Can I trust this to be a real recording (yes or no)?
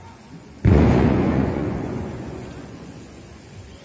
no